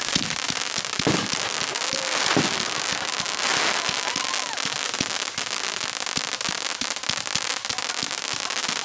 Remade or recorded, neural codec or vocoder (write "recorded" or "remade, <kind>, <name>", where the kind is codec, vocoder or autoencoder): recorded